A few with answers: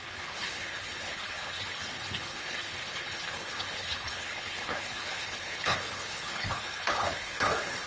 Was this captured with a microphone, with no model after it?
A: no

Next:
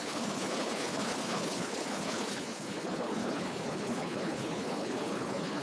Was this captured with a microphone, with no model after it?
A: no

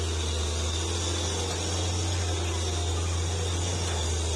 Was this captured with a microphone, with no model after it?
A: yes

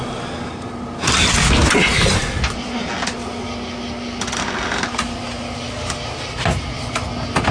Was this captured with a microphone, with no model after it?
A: yes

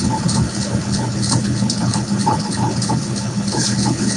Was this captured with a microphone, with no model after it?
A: no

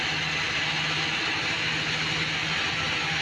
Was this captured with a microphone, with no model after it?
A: yes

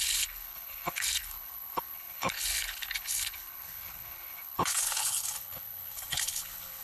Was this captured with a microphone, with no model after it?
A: no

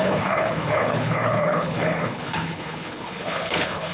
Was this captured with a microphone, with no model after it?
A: no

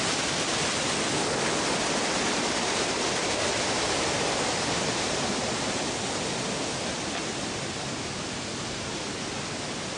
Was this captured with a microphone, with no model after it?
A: yes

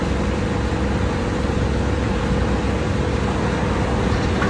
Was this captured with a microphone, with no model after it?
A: yes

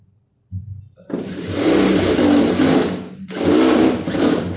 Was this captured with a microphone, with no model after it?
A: yes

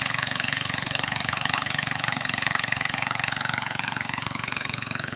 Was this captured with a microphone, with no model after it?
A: no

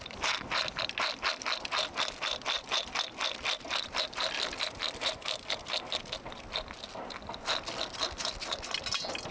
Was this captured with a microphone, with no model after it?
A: yes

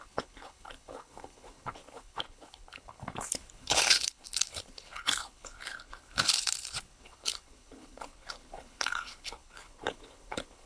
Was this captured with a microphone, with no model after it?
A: no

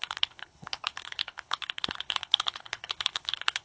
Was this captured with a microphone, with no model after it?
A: no